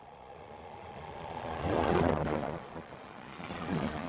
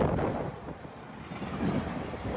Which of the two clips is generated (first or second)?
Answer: first